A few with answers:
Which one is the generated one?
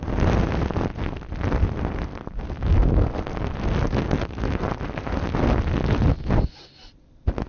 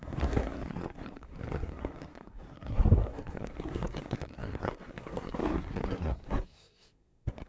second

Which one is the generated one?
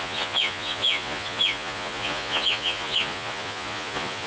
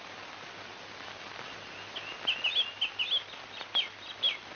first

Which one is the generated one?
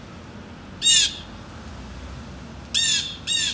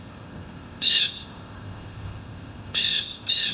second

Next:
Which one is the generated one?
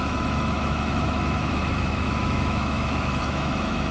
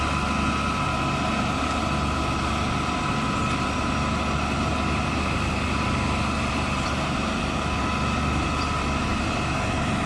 first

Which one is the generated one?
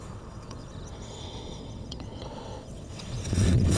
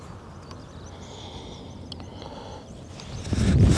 first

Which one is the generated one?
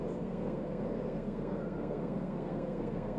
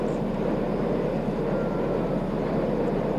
first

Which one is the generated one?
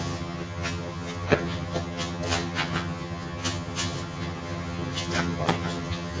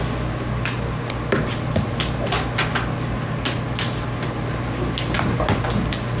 first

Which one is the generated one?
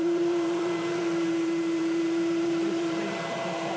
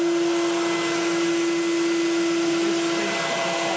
first